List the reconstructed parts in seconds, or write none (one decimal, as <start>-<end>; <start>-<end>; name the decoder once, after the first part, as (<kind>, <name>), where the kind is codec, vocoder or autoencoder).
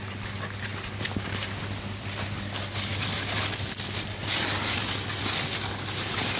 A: none